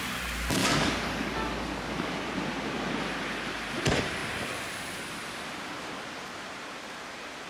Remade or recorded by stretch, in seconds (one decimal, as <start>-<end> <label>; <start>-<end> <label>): 0.0-0.6 recorded; 0.6-2.2 remade; 2.2-7.5 recorded